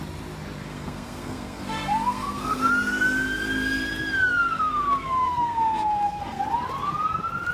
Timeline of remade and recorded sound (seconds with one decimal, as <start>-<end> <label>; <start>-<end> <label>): 0.0-0.7 recorded; 0.7-2.7 remade; 2.7-4.4 recorded; 4.4-6.4 remade; 6.4-7.5 recorded